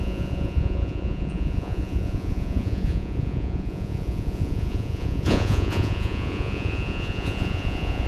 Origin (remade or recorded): remade